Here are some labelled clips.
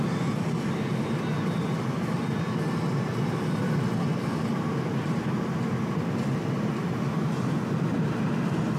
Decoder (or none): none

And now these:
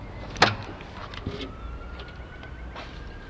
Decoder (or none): none